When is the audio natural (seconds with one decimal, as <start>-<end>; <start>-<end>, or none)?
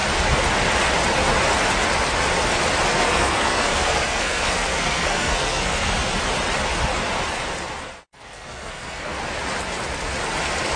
0.0-2.9; 5.9-8.1; 9.2-10.8